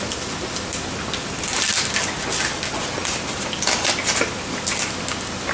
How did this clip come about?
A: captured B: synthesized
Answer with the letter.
A